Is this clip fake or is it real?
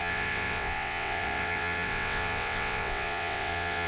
fake